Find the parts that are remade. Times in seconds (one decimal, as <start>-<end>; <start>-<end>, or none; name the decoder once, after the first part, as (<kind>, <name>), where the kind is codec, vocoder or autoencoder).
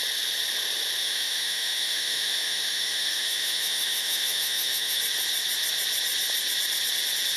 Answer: 1.0-5.0 (autoencoder, DAC-VAE)